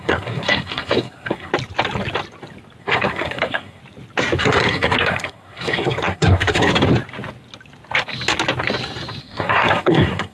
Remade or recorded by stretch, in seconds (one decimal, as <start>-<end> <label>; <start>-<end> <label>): 0.0-1.5 remade; 1.5-2.8 recorded; 2.8-3.8 remade; 3.8-4.4 recorded; 4.4-6.7 remade; 6.7-9.2 recorded; 9.2-10.3 remade